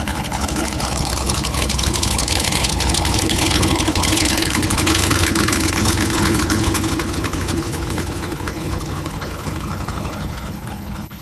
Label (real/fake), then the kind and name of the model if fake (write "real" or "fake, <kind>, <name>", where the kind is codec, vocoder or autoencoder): fake, codec, HILCodec